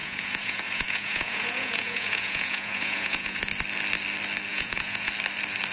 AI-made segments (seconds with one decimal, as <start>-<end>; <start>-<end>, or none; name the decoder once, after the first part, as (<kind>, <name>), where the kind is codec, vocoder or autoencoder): 0.0-3.4 (vocoder, Vocos); 4.5-5.1